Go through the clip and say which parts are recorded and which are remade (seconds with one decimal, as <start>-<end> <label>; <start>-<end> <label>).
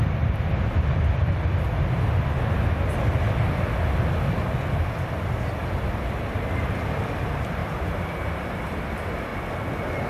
0.0-1.2 remade; 1.2-4.8 recorded; 4.8-5.6 remade; 5.6-6.3 recorded; 6.3-9.3 remade; 9.3-10.1 recorded